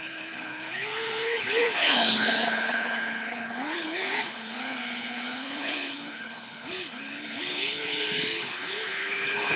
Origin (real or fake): fake